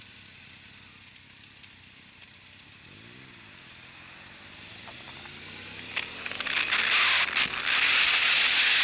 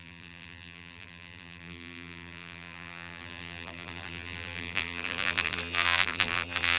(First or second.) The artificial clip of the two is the second